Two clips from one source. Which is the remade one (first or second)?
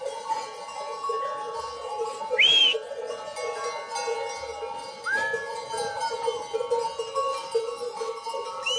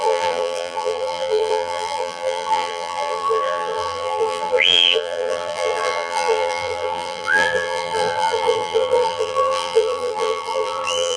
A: second